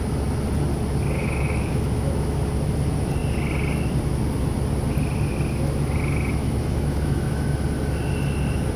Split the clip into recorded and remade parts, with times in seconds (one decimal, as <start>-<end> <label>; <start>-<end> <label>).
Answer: 0.0-1.2 recorded; 1.2-2.4 remade; 2.4-6.4 recorded; 6.4-7.5 remade; 7.5-8.8 recorded